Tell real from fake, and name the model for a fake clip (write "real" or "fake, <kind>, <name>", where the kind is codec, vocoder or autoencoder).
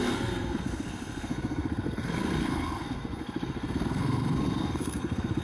fake, codec, SNAC